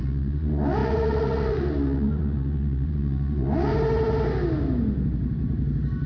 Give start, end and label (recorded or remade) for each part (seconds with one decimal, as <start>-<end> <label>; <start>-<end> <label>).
0.0-3.7 remade; 3.7-6.1 recorded